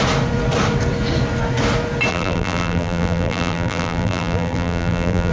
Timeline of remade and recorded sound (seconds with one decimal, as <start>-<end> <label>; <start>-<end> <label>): 0.0-2.1 recorded; 2.1-5.3 remade